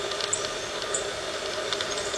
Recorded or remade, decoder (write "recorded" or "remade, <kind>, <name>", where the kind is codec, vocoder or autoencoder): recorded